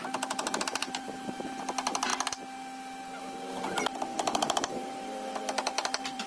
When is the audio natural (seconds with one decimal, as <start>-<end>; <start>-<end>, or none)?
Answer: 0.0-0.8; 1.5-4.1